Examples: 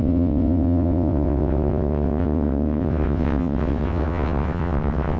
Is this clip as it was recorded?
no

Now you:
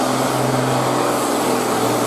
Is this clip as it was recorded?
yes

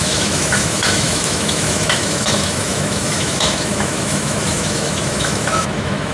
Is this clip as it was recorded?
no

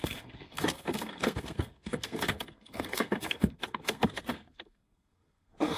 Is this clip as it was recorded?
no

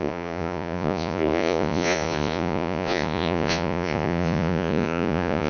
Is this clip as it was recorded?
no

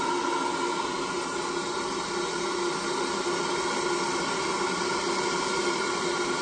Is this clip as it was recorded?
yes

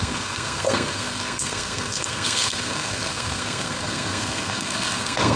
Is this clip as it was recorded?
no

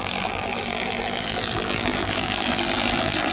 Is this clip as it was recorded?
no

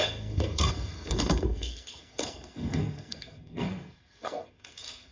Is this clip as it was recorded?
no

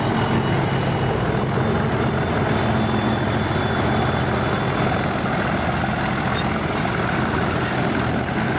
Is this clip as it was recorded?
yes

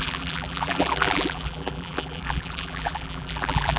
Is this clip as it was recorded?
no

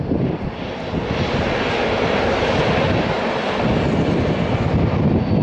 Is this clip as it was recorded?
yes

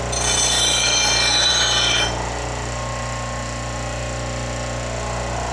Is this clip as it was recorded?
yes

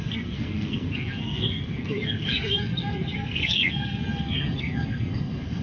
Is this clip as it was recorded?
no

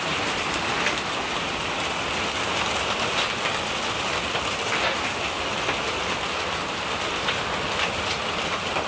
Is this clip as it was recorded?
yes